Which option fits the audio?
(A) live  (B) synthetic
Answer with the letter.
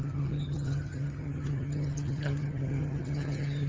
B